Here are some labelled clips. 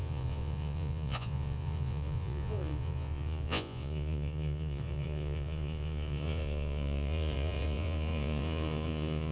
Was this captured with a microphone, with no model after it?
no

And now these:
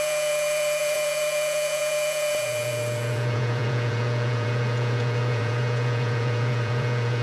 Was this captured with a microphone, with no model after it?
no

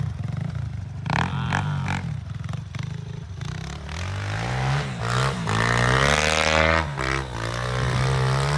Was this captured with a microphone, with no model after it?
yes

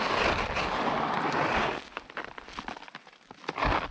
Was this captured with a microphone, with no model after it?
yes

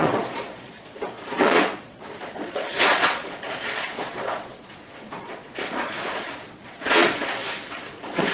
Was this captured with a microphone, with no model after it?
no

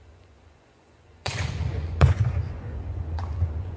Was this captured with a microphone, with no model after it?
no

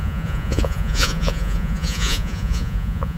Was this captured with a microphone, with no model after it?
no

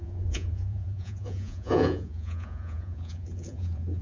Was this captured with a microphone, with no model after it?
no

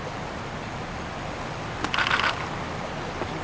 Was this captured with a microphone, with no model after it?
yes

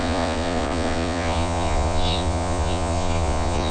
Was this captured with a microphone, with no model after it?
no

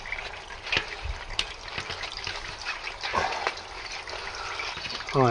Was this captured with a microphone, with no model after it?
yes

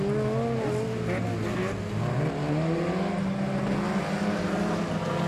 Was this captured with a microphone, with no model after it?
yes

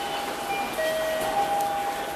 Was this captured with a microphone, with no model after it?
yes